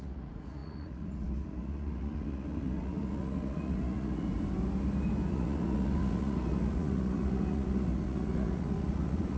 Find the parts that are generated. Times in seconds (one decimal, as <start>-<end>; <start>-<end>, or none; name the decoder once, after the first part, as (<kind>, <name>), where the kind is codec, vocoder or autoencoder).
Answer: 0.0-4.3 (vocoder, Vocos); 5.3-9.4